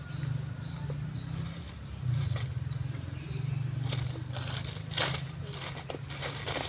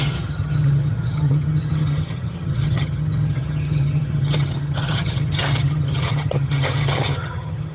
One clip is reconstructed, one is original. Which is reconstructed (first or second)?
second